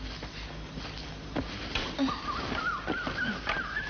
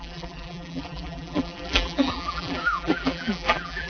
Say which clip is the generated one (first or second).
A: second